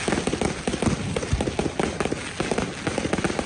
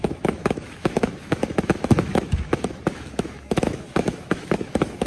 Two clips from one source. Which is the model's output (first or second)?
second